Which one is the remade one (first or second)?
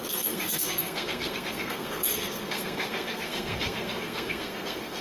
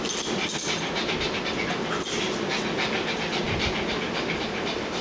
first